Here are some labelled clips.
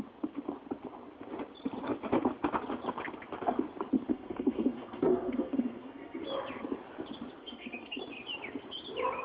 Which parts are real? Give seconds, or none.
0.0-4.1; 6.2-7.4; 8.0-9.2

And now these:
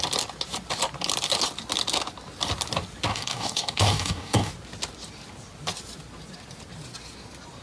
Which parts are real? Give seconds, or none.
0.0-3.1; 4.5-7.6

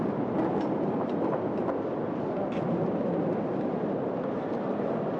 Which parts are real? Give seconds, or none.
0.0-5.2

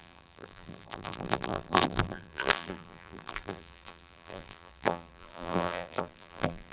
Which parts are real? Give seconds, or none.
none

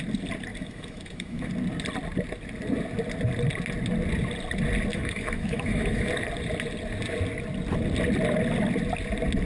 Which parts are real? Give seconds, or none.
0.0-0.5; 1.5-4.9; 6.1-9.5

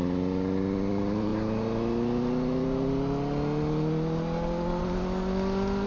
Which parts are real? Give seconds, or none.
0.0-5.9